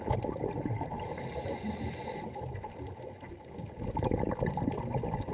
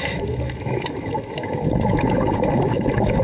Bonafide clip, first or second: first